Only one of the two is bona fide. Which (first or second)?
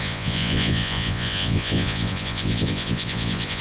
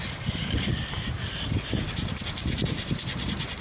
second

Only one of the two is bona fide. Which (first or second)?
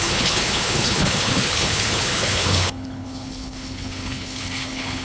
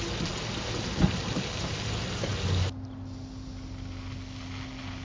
second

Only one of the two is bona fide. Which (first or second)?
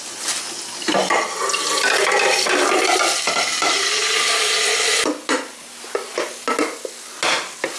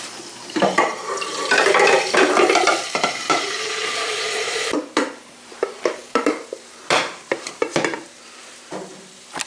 first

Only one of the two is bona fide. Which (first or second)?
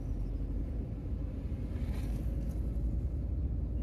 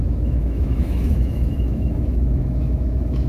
first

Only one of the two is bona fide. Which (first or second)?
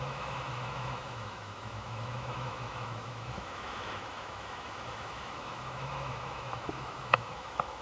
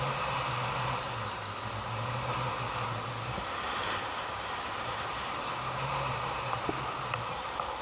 second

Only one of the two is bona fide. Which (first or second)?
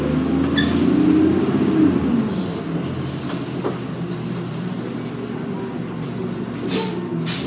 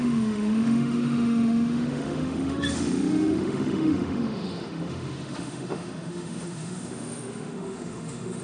first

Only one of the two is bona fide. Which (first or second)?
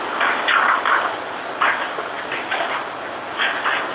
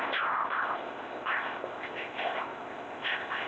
first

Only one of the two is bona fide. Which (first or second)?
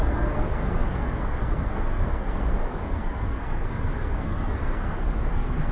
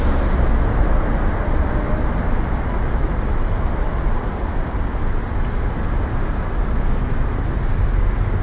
second